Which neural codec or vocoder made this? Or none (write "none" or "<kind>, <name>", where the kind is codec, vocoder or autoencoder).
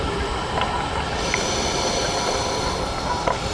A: none